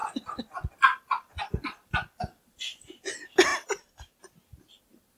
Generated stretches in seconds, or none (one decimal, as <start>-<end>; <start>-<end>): 0.0-3.1; 3.5-4.2